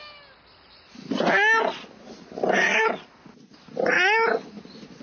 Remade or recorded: recorded